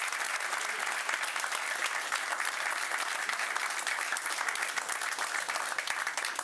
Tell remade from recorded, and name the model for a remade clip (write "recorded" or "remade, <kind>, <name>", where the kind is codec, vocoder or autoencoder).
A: recorded